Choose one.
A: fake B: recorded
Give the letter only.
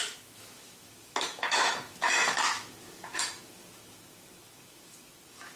A